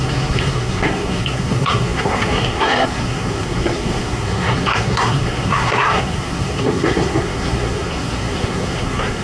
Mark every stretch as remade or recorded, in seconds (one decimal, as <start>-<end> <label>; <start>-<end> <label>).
0.0-9.2 remade